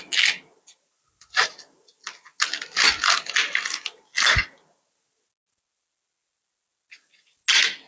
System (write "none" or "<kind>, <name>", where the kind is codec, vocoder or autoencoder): none